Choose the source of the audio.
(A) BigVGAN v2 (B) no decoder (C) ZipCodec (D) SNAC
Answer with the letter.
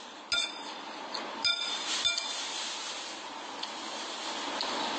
B